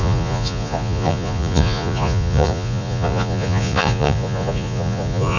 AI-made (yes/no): yes